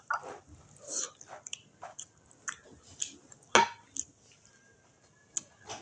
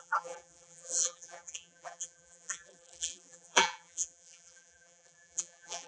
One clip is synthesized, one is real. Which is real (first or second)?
first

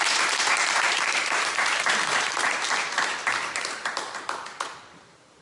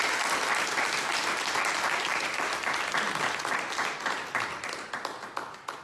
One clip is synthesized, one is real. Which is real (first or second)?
second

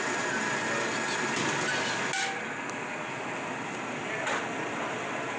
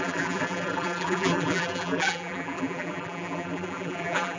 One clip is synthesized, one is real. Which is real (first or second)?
first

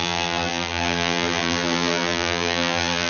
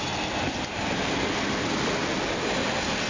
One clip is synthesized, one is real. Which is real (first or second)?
second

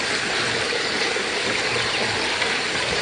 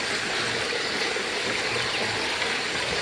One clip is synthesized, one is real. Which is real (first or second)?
second